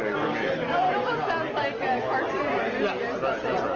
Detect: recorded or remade recorded